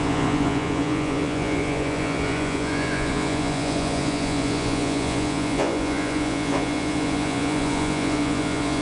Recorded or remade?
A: remade